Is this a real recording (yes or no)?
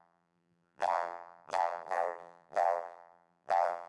no